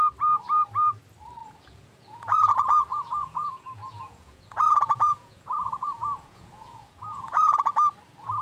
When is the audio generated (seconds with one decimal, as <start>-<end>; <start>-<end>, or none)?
1.4-2.5; 2.9-7.7